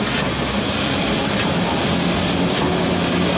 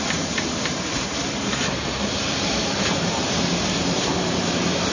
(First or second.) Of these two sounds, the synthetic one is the second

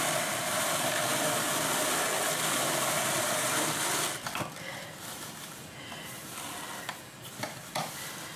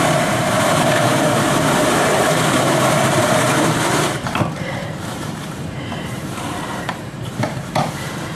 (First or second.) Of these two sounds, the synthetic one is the second